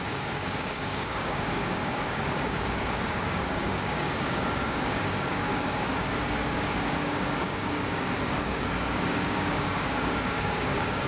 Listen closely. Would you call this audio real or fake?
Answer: fake